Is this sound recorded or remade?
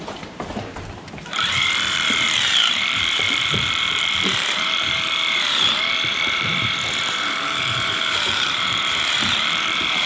remade